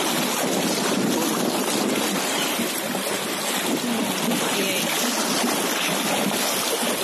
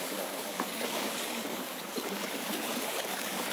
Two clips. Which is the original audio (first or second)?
first